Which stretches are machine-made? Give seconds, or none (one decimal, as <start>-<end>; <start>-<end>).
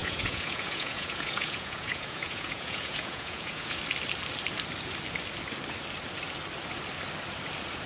0.0-3.8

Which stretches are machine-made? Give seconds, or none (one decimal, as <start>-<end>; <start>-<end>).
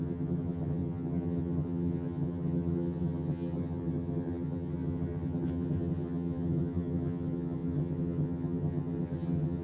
0.0-9.6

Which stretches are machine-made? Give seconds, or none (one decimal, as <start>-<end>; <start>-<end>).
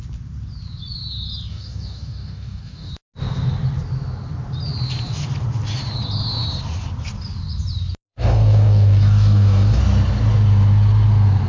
1.5-2.9; 8.1-9.8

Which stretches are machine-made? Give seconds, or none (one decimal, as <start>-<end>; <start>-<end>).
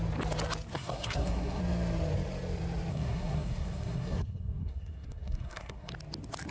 0.7-1.6; 2.9-5.9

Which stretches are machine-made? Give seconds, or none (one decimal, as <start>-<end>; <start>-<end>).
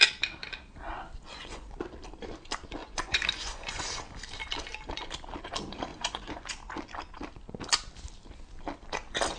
1.3-1.9; 2.8-3.9; 5.9-6.5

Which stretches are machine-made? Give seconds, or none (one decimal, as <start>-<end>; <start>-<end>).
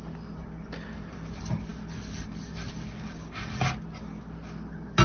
none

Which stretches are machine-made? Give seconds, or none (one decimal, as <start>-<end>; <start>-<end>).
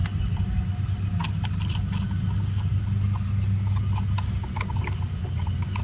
none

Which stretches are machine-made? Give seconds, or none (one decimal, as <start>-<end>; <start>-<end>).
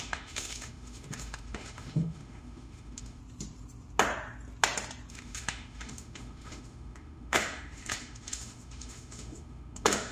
0.0-3.2; 5.1-10.1